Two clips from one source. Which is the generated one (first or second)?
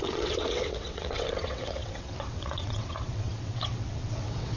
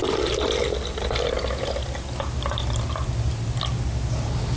first